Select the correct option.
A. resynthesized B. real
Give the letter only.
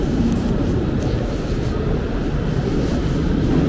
B